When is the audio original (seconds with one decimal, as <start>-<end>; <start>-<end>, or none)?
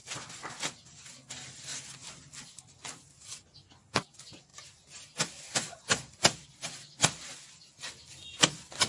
2.1-8.9